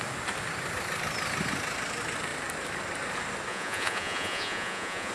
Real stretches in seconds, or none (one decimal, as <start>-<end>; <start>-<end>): 0.0-3.5